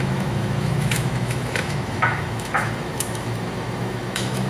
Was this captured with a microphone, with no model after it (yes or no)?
no